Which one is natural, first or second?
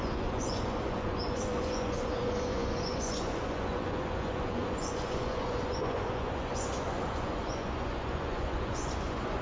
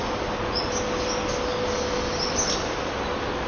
second